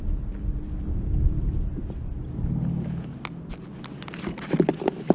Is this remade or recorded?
recorded